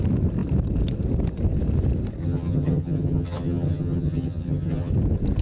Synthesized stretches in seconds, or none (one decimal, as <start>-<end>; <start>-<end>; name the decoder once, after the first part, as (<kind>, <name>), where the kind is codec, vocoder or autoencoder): 2.2-4.9 (vocoder, HiFi-GAN)

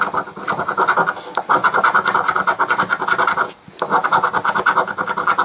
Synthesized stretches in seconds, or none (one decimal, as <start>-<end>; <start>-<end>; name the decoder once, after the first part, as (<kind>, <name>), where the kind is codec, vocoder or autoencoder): none

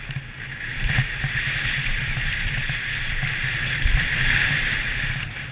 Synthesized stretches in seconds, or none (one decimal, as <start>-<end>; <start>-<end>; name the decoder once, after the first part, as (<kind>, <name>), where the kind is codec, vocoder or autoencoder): 1.9-5.5 (vocoder, BigVGAN v2)

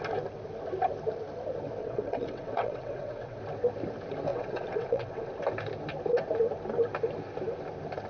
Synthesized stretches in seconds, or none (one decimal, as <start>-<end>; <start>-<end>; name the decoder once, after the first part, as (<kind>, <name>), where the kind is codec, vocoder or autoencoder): 1.8-3.4 (vocoder, WaveNeXt); 4.3-5.3

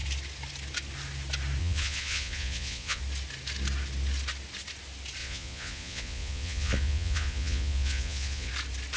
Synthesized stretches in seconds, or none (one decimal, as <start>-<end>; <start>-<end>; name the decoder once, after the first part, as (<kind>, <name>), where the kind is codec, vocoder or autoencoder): 1.6-3.0 (vocoder, Vocos); 5.2-8.5

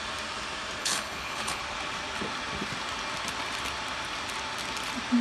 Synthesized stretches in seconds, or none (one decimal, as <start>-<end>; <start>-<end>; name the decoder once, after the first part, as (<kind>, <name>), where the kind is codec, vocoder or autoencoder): 0.8-1.6 (codec, HILCodec)